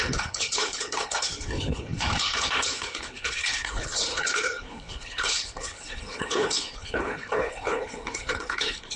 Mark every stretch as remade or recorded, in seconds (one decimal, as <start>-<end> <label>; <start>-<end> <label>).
0.0-9.0 remade